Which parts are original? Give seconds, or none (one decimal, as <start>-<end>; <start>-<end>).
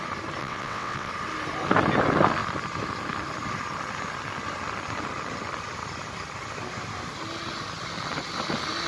0.0-0.4; 1.1-8.9